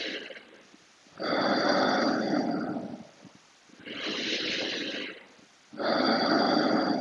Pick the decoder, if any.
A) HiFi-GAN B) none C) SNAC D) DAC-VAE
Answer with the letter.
B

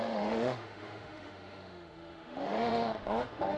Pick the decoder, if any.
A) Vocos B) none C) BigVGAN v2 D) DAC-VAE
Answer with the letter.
D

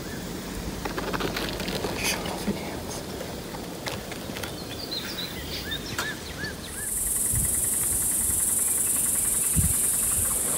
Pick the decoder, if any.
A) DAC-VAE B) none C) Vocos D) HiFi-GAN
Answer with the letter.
B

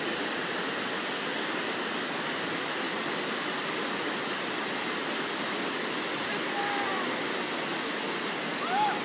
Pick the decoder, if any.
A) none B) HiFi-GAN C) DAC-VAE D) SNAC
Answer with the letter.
A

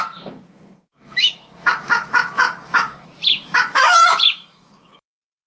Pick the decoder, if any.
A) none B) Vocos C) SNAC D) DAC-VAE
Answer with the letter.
D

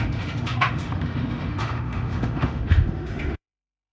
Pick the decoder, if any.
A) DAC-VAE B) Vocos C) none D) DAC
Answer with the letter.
A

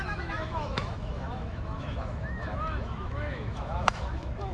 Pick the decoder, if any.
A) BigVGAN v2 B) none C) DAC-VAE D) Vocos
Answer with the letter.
C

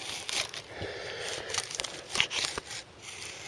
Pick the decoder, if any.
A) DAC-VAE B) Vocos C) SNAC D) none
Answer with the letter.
D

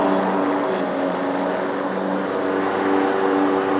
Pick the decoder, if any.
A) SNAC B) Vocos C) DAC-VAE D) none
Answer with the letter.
D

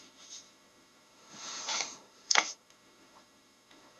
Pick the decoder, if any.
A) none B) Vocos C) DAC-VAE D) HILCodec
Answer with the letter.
C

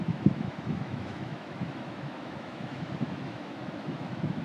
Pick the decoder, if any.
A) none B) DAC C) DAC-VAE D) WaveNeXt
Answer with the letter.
C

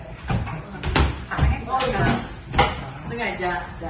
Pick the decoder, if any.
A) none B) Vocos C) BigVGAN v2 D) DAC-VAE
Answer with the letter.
A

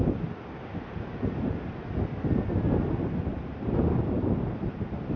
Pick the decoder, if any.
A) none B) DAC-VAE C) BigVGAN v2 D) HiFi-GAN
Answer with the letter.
A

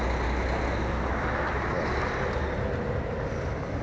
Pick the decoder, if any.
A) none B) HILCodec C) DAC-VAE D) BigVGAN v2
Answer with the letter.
A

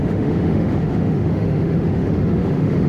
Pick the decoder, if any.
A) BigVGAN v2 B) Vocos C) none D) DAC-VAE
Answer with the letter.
D